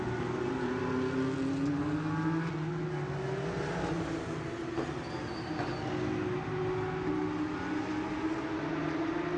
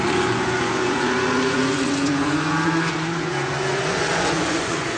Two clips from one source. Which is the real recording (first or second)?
first